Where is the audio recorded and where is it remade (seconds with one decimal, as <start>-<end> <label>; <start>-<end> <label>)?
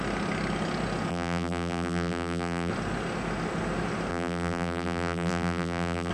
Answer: 0.0-1.1 recorded; 1.1-2.7 remade; 2.7-4.1 recorded; 4.1-6.1 remade